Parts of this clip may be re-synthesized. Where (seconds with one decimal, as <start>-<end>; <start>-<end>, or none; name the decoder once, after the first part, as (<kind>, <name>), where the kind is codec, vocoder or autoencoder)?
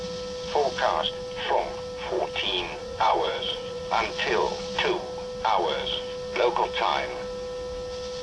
2.8-3.8 (vocoder, Vocos)